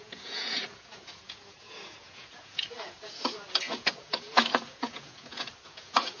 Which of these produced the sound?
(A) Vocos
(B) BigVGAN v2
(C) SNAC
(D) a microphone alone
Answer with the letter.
A